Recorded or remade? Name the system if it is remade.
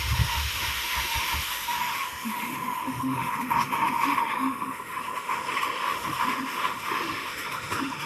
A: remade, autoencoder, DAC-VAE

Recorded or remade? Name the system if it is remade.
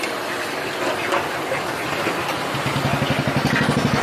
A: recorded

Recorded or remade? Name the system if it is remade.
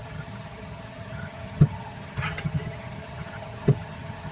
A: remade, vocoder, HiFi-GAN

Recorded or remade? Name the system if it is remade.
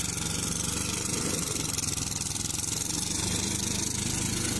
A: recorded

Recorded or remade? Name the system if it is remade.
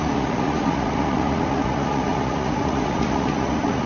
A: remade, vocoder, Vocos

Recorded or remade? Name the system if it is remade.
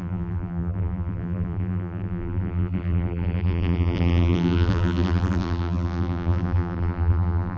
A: remade, vocoder, BigVGAN v2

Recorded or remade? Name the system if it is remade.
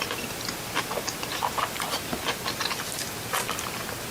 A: recorded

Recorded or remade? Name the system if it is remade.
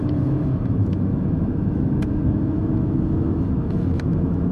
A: remade, autoencoder, DAC-VAE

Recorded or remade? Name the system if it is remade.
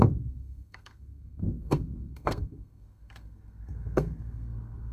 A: remade, codec, SNAC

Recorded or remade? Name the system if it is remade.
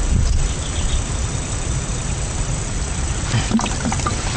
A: recorded